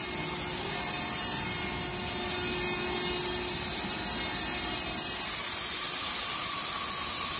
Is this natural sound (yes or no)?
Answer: yes